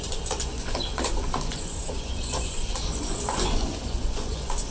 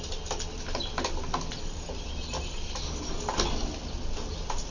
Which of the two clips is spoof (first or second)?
first